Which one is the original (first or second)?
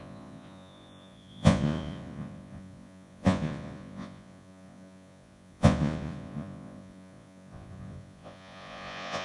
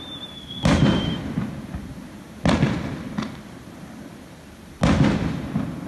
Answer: second